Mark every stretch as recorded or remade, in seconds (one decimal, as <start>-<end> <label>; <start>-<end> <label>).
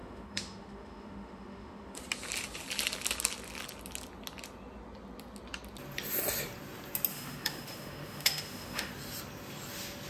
0.0-2.0 remade; 2.0-7.1 recorded; 7.1-8.9 remade; 8.9-10.1 recorded